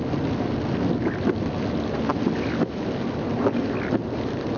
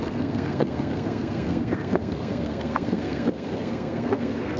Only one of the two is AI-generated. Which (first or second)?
second